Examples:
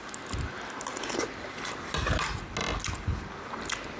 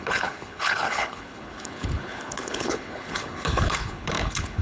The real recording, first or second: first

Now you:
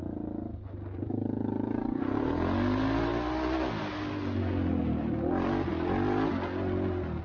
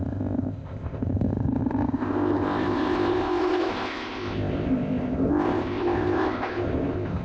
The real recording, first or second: first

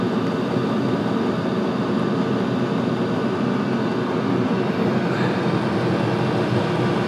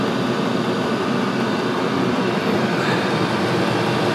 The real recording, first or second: first